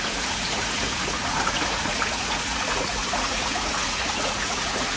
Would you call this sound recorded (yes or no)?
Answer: no